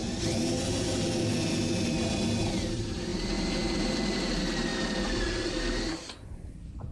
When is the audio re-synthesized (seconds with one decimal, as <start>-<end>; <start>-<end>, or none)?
2.7-4.7; 6.1-6.9